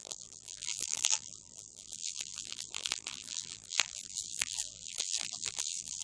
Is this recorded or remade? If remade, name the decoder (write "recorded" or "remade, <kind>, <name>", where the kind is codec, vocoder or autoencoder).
remade, vocoder, BigVGAN v2